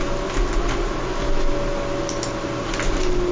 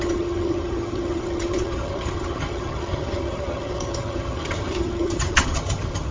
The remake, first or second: second